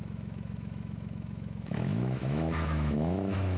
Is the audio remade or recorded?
remade